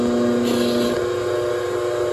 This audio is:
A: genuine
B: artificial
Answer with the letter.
A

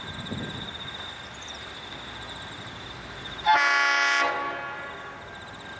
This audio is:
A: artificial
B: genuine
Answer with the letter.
B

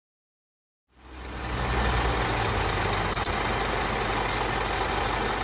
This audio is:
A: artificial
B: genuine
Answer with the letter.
B